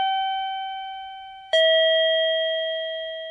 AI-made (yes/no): yes